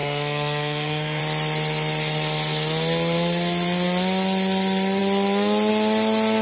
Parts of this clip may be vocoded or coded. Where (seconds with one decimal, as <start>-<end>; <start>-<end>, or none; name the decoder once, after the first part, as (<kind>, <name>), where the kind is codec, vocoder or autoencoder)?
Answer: 0.0-1.2 (codec, SNAC)